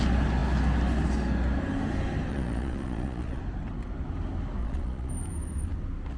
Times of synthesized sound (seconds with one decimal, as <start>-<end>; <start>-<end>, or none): 2.3-3.4; 4.6-5.1